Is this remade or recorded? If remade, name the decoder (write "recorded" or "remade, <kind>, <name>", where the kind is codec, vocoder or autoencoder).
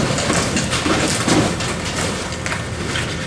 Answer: recorded